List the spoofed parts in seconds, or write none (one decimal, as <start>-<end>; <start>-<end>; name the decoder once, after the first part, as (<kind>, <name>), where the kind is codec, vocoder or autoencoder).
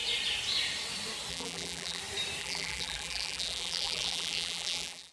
1.3-2.0 (vocoder, BigVGAN v2); 2.4-5.1